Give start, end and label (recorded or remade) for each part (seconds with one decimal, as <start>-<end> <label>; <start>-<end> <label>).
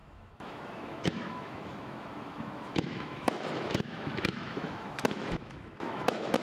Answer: 0.0-6.4 remade